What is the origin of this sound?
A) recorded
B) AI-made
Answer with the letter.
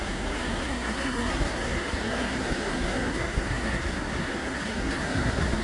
B